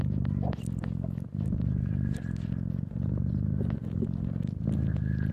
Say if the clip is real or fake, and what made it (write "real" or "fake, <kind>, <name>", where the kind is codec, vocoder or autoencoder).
real